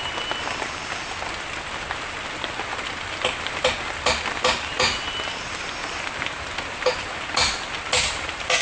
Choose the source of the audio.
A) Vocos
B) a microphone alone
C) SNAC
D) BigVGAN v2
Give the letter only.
B